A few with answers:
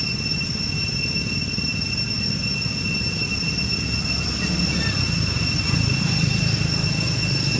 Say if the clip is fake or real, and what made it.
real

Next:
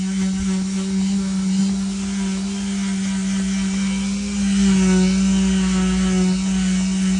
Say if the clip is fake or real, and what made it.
real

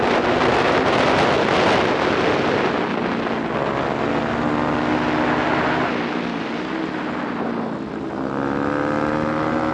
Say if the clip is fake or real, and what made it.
real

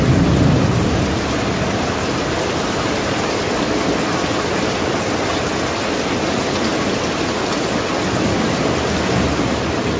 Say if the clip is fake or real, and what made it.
real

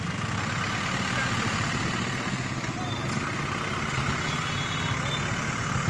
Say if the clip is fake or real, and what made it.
real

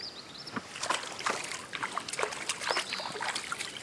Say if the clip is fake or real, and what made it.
real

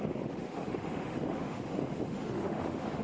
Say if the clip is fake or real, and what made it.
fake, autoencoder, DAC-VAE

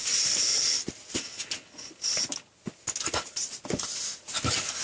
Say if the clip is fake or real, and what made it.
real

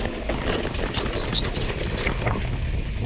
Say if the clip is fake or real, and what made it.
real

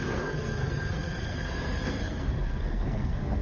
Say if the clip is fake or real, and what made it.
fake, codec, SNAC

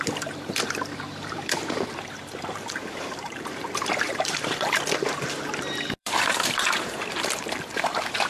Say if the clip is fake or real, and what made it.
fake, vocoder, BigVGAN v2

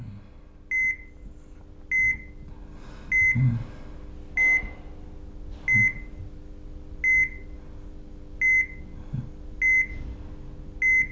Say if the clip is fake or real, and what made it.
real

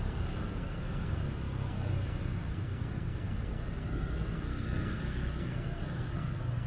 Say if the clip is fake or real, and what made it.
fake, codec, SNAC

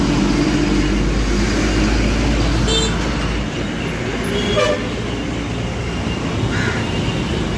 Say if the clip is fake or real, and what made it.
real